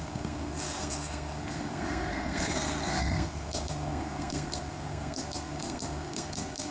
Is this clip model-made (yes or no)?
yes